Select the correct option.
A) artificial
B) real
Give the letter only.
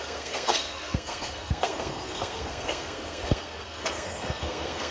A